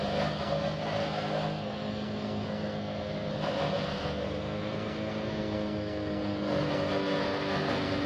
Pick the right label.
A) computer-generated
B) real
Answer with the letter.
A